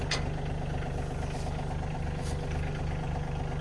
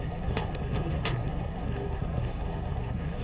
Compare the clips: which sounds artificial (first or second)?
second